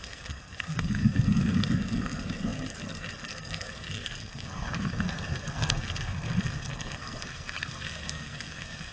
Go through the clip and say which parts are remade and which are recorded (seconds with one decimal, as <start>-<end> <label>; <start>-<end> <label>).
0.0-8.9 remade